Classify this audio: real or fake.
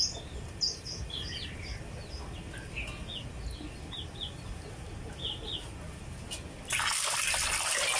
real